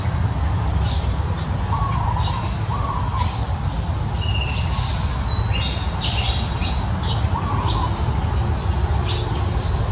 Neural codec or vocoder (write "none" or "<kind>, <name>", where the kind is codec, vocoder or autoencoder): none